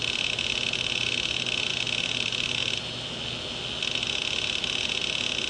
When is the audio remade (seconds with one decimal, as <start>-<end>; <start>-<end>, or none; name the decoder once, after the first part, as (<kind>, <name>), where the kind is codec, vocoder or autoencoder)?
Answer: none